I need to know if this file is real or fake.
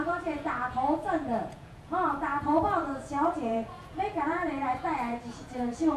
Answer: fake